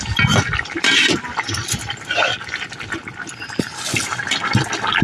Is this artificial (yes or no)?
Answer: yes